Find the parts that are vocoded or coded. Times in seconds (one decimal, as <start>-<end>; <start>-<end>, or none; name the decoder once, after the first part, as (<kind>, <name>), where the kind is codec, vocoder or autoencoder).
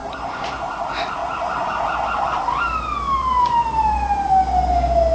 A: none